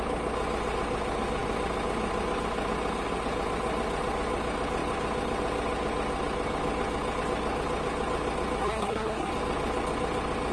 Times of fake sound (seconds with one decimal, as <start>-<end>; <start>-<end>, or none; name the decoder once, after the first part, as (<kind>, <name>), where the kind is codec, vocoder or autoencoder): 8.6-9.3 (codec, SNAC)